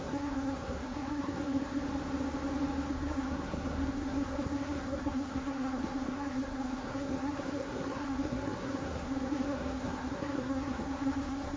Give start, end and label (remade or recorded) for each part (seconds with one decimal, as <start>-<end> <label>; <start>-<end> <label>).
0.0-1.8 remade; 1.8-2.9 recorded; 2.9-11.6 remade